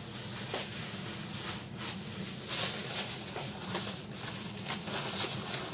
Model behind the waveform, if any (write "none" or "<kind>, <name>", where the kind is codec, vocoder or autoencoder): vocoder, Vocos